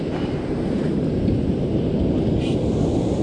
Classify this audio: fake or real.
real